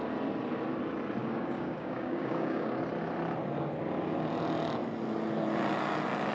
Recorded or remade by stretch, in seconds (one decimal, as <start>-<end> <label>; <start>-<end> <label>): 0.0-1.2 recorded; 1.2-2.8 remade; 2.8-6.3 recorded